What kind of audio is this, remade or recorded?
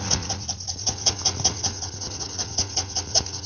remade